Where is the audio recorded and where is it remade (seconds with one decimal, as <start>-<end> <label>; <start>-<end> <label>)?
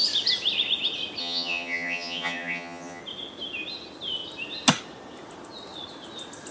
0.0-1.2 recorded; 1.2-3.0 remade; 3.0-6.5 recorded